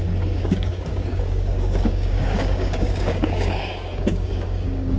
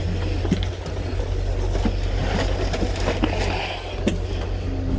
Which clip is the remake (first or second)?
first